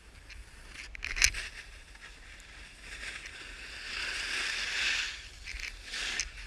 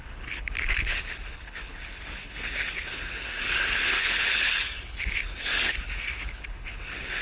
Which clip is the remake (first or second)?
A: second